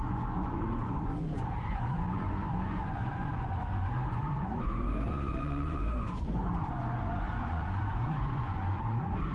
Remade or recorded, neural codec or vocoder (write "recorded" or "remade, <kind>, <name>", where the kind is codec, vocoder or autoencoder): remade, vocoder, Vocos